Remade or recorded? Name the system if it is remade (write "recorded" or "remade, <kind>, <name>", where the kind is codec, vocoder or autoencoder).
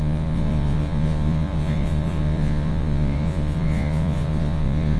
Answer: remade, vocoder, Vocos